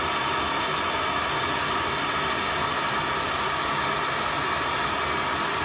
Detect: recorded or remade recorded